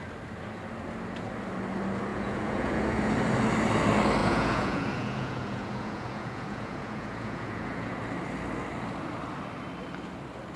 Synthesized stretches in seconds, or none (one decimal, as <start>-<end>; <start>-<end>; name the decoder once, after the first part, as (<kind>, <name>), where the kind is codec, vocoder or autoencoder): 2.1-3.1 (vocoder, Vocos); 4.2-8.0